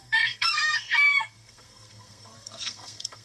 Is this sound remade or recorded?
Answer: remade